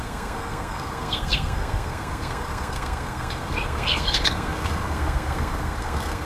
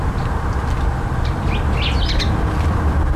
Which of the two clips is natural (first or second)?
second